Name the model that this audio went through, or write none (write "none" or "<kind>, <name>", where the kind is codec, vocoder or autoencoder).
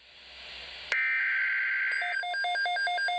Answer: none